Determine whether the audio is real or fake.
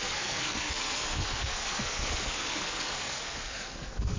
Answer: fake